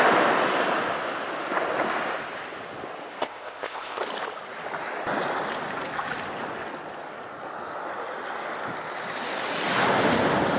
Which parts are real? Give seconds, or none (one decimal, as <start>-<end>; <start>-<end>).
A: 0.0-3.2; 4.0-10.6